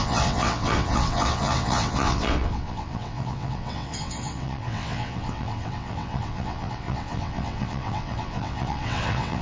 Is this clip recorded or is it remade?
remade